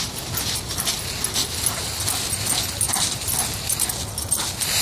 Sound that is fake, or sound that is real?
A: real